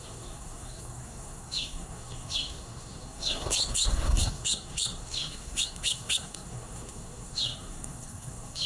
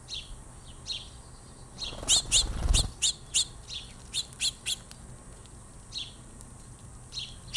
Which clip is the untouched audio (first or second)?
second